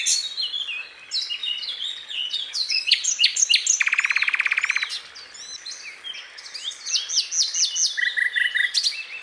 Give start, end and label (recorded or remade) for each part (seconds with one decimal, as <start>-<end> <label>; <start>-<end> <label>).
0.0-1.4 recorded; 1.4-3.4 remade; 3.4-9.2 recorded